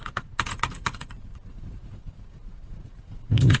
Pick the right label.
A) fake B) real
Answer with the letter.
A